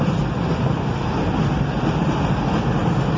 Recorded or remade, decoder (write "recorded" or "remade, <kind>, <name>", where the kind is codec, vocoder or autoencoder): recorded